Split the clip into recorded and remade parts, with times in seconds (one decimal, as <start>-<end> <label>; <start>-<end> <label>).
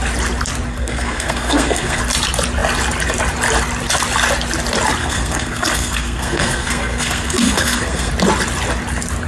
0.0-0.7 recorded; 0.7-2.0 remade; 2.0-5.0 recorded; 5.0-8.1 remade; 8.1-9.3 recorded